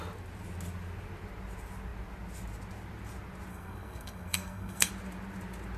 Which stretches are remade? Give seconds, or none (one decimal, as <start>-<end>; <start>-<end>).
3.5-4.9